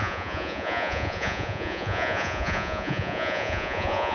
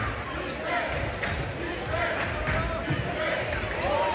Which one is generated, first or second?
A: first